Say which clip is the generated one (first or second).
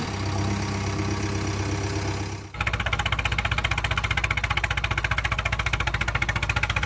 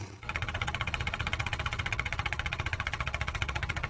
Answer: second